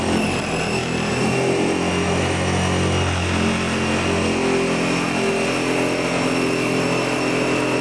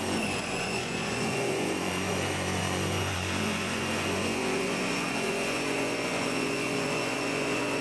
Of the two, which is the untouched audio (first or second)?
first